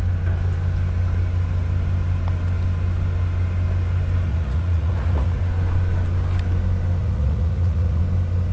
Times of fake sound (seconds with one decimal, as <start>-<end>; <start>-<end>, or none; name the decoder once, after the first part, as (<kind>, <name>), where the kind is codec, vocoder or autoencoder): 4.3-5.4 (vocoder, Vocos); 7.0-8.0